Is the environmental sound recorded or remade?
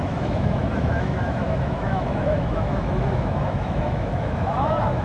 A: remade